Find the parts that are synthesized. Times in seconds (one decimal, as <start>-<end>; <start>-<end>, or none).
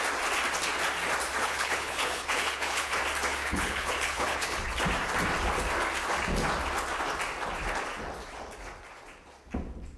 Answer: 1.4-3.0; 3.4-4.6